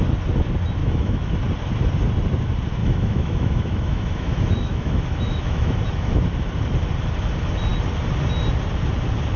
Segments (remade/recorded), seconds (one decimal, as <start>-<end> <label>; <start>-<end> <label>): 0.0-0.8 recorded; 0.8-1.3 remade; 1.3-2.8 recorded; 2.8-6.2 remade; 6.2-9.4 recorded